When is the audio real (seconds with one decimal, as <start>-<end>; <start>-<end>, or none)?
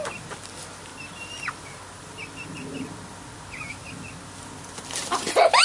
0.0-5.6